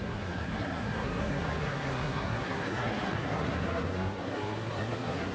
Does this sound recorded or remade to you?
remade